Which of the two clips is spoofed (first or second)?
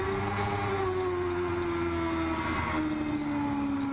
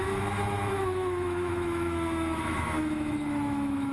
second